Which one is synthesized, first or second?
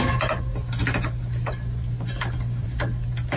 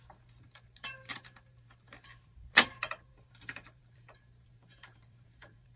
second